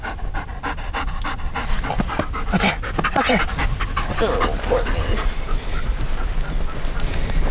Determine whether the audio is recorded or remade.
recorded